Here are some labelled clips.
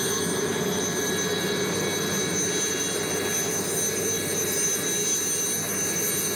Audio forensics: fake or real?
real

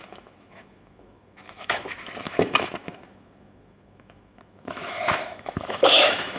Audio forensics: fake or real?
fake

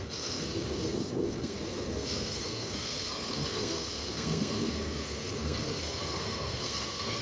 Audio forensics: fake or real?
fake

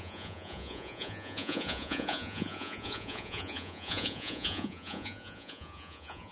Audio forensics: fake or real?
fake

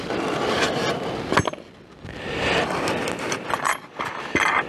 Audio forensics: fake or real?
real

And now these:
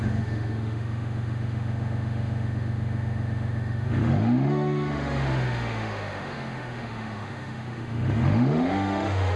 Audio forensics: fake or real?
fake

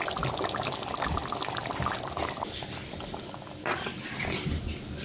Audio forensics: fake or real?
real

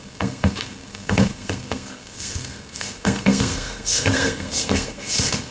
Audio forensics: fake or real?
fake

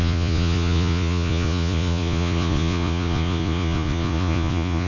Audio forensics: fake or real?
fake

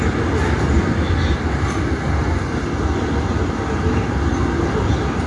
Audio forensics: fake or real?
real